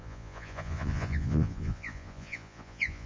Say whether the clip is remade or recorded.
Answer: remade